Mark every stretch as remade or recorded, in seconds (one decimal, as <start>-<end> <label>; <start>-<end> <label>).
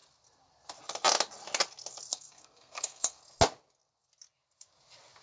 0.0-2.1 recorded; 2.1-3.2 remade; 3.2-5.2 recorded